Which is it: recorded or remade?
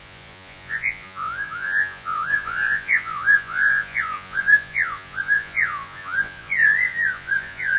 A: remade